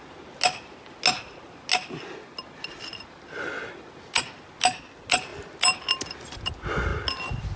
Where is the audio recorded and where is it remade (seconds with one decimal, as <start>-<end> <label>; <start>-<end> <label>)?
0.0-7.6 recorded